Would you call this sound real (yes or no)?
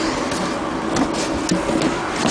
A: yes